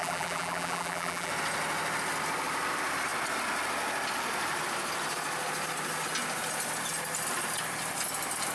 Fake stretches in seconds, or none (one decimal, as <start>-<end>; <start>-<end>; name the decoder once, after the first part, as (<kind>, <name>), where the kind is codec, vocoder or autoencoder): 0.0-1.3 (vocoder, BigVGAN v2)